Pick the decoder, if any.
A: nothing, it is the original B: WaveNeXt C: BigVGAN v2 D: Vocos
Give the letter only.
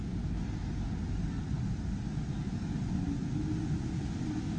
A